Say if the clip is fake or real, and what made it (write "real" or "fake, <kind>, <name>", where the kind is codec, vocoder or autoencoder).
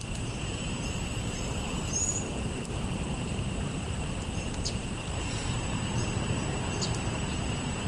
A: fake, vocoder, BigVGAN v2